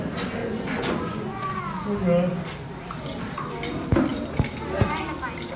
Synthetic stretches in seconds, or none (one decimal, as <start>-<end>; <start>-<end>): 0.4-1.6